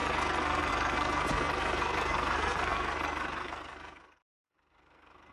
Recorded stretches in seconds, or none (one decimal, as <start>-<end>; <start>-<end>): none